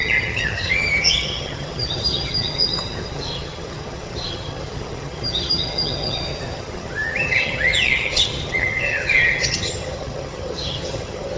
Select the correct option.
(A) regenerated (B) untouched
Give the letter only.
A